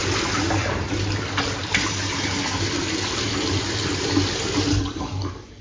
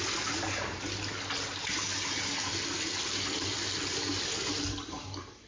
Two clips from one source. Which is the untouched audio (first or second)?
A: second